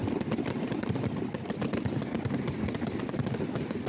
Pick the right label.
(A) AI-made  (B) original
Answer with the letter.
B